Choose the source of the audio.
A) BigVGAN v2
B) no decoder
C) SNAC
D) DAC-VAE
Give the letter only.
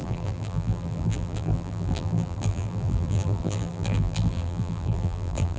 A